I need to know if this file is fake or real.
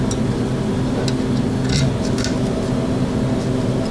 real